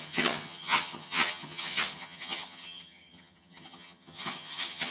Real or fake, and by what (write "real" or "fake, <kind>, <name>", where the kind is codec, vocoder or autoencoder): fake, vocoder, HiFi-GAN